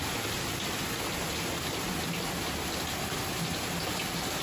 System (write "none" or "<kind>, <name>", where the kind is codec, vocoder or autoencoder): none